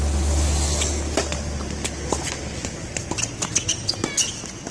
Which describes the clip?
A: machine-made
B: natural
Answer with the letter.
B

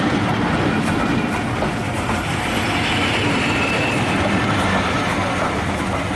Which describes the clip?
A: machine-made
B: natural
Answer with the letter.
B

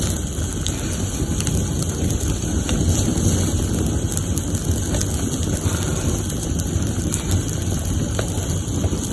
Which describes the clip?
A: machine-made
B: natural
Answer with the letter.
B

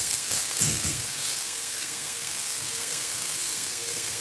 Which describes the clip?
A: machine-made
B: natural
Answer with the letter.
A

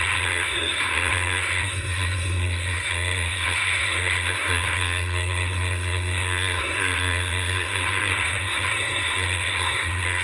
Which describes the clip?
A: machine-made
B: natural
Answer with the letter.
A